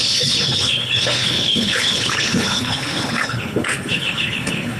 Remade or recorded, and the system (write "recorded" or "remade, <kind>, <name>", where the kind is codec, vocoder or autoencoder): remade, codec, HILCodec